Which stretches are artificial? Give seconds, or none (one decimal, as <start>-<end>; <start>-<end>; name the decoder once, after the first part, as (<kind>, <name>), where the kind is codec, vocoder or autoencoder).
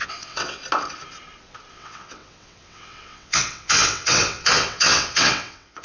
0.0-0.6 (vocoder, WaveNeXt); 1.7-5.8